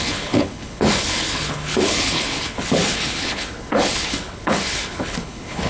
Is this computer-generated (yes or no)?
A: yes